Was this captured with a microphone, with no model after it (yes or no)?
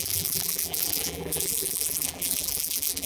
no